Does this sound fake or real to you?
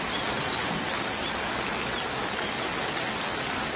real